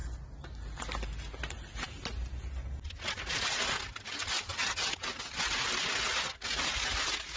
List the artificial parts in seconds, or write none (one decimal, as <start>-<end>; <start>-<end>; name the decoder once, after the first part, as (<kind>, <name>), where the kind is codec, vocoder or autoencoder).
none